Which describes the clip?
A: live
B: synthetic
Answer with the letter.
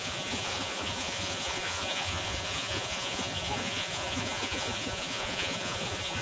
B